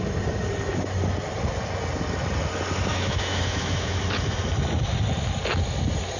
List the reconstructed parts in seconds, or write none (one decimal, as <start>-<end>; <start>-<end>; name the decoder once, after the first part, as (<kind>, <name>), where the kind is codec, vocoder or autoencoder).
2.9-4.0 (autoencoder, DAC-VAE)